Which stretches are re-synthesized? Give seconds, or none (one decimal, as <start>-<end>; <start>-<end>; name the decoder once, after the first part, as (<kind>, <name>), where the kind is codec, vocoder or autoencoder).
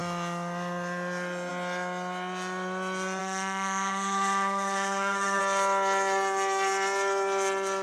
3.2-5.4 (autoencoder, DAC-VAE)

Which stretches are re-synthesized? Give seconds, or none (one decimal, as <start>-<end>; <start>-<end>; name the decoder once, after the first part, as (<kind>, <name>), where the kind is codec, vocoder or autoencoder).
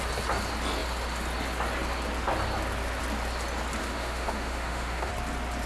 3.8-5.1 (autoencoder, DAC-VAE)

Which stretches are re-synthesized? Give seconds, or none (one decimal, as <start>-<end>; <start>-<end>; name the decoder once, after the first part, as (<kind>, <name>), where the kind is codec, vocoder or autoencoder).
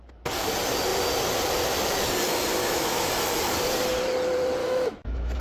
2.6-3.1 (autoencoder, DAC-VAE); 4.6-5.4